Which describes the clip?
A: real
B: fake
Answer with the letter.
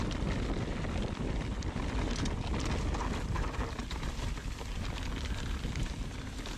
A